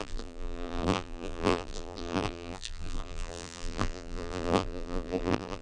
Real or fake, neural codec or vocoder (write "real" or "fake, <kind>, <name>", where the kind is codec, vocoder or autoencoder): fake, vocoder, BigVGAN v2